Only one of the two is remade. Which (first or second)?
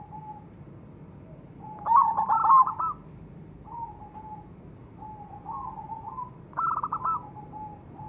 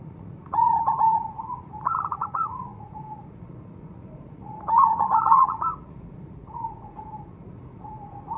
second